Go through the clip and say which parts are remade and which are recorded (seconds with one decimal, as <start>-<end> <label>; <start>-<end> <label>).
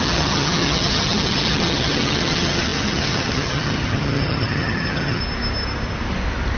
0.0-5.2 remade; 5.2-6.6 recorded